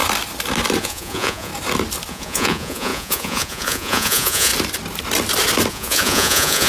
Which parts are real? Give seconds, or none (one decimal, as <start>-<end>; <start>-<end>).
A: 0.0-0.8; 1.5-2.1; 4.5-5.7